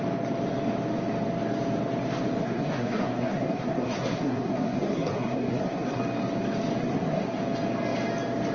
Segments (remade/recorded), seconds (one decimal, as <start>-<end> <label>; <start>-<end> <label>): 0.0-2.4 recorded; 2.4-6.0 remade; 6.0-6.8 recorded; 6.8-7.4 remade; 7.4-8.5 recorded